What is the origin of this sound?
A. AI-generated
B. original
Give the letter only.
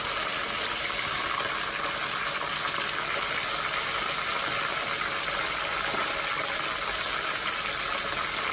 B